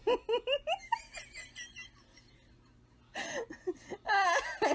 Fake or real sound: real